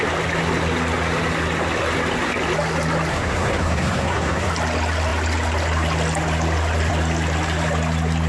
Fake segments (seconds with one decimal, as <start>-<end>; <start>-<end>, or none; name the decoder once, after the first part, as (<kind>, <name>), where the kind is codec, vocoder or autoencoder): 3.1-4.5 (codec, SNAC)